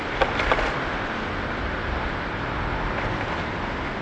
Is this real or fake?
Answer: real